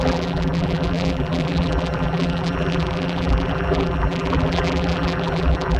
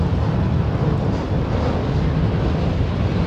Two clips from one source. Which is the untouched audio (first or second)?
second